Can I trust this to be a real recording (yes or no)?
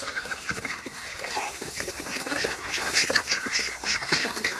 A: no